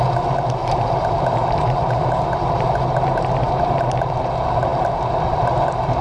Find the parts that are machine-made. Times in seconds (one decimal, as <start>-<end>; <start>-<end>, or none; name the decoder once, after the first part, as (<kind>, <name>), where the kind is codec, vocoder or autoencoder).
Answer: 0.6-4.2 (vocoder, BigVGAN v2)